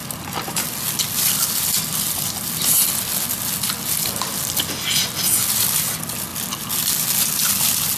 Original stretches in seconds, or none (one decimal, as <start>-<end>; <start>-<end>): 0.0-8.0